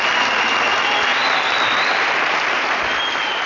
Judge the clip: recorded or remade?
recorded